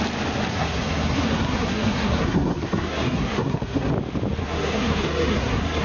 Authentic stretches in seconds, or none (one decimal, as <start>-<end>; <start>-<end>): 0.0-0.5; 3.9-4.4